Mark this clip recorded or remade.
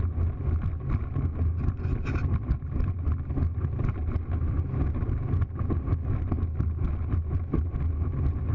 recorded